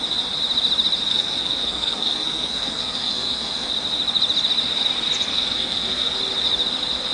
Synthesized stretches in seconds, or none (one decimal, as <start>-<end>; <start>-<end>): 1.1-3.7; 5.3-6.1